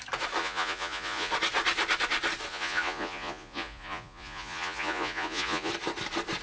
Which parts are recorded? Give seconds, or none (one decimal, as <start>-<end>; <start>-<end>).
0.0-0.4; 1.3-2.5; 5.7-6.4